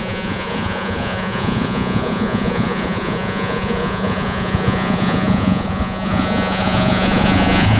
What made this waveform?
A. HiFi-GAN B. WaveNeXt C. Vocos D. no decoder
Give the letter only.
C